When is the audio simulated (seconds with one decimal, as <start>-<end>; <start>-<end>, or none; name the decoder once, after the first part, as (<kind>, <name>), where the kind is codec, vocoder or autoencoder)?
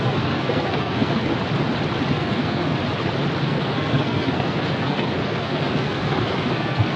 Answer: 0.0-1.3 (codec, SNAC); 2.1-2.8; 3.4-7.0